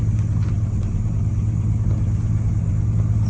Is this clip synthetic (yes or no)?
no